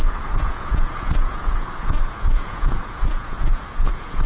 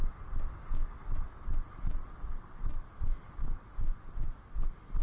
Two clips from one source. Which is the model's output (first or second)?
first